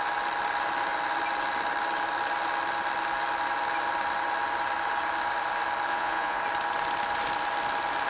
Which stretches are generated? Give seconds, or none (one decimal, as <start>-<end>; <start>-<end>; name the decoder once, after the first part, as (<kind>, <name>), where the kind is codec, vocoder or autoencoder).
5.9-6.4 (vocoder, Vocos)